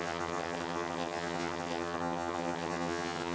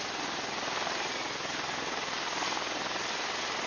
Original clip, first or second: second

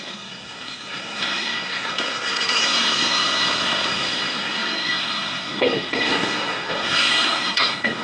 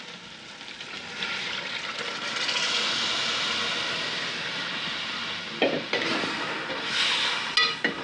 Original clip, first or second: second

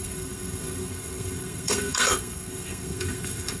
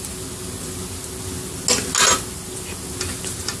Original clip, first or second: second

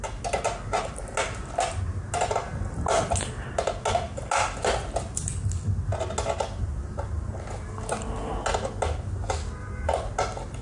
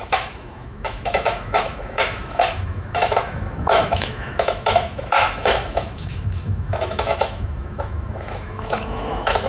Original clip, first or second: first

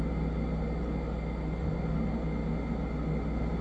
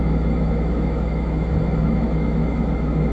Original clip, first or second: first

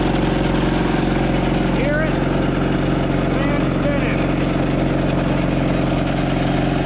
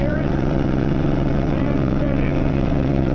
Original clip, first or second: first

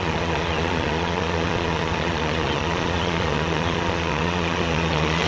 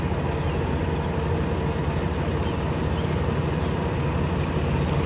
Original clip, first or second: second